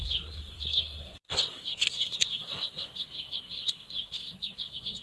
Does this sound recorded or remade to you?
remade